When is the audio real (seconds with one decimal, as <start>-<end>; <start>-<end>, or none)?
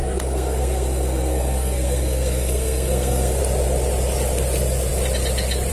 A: 3.4-5.7